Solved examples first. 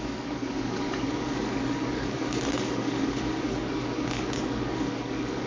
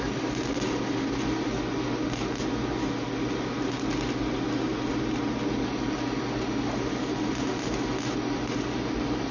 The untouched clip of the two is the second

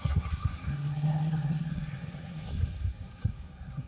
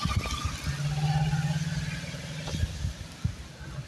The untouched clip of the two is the second